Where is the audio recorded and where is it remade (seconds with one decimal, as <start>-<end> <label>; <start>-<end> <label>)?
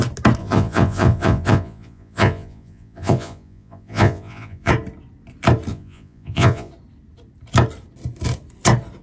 0.0-0.4 recorded; 0.4-4.7 remade; 4.7-5.7 recorded; 5.7-6.7 remade; 6.7-9.0 recorded